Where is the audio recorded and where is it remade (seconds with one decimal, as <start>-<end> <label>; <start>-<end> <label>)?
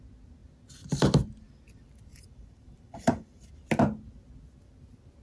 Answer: 0.0-2.1 recorded; 2.1-3.5 remade; 3.5-5.2 recorded